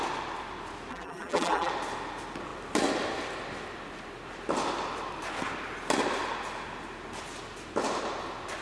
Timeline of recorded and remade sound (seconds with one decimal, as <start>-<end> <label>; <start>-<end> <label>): 0.0-0.9 recorded; 0.9-1.7 remade; 1.7-8.6 recorded